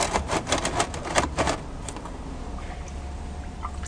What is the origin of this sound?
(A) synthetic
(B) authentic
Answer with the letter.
B